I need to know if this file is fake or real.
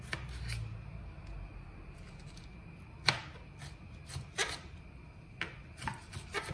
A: real